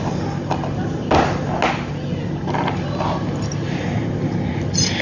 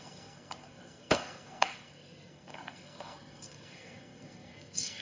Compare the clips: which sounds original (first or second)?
first